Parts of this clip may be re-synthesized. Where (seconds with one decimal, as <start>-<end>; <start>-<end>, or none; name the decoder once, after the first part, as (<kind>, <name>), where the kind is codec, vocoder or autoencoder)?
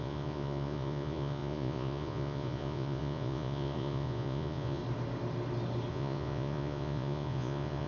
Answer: 0.0-4.8 (vocoder, Vocos); 5.9-7.9